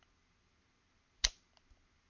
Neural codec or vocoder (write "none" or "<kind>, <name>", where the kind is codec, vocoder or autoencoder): none